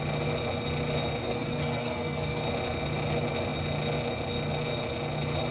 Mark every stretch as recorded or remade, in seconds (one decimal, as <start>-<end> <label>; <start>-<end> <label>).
0.0-1.2 recorded; 1.2-2.4 remade; 2.4-5.5 recorded